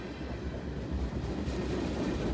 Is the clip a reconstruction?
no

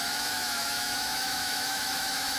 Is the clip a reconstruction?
yes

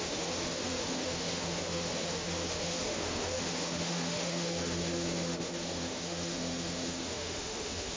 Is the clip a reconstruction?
yes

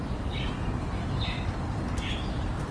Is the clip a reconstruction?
no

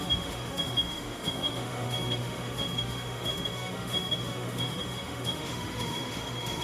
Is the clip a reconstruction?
yes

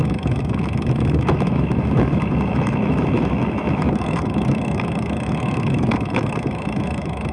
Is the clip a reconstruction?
yes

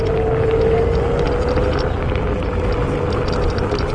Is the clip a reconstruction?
no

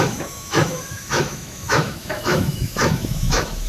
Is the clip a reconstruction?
yes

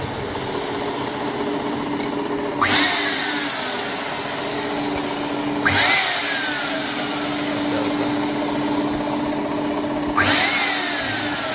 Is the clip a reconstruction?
no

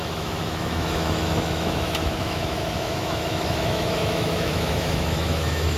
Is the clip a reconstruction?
yes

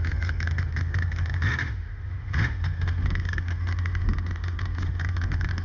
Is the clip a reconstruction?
yes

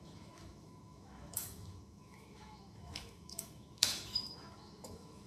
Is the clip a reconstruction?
yes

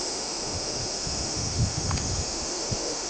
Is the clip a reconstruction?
yes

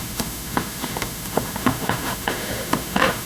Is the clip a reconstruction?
yes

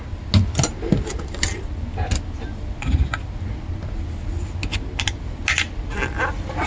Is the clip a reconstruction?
no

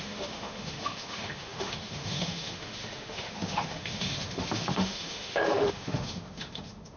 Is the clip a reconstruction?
yes